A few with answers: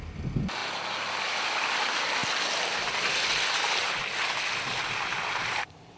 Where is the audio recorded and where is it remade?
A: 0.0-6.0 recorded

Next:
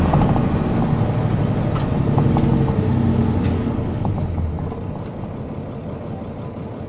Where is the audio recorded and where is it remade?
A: 0.0-3.1 recorded; 3.1-4.1 remade; 4.1-6.9 recorded

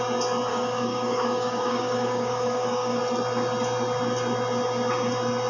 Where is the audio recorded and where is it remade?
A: 0.0-0.5 recorded; 0.5-3.0 remade; 3.0-5.5 recorded

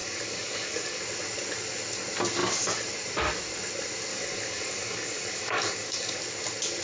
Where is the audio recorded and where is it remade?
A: 0.0-1.0 remade; 1.0-4.1 recorded; 4.1-6.2 remade; 6.2-6.8 recorded

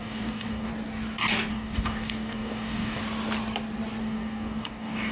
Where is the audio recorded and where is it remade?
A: 0.0-0.7 remade; 0.7-1.5 recorded; 1.5-3.0 remade; 3.0-4.0 recorded; 4.0-5.1 remade

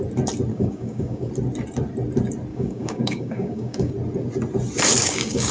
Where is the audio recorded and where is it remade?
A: 0.0-0.5 recorded; 0.5-1.3 remade; 1.3-2.5 recorded; 2.5-3.9 remade; 3.9-5.0 recorded; 5.0-5.5 remade

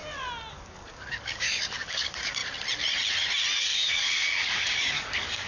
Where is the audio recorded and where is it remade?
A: 0.0-0.5 recorded; 0.5-2.4 remade; 2.4-3.6 recorded; 3.6-5.5 remade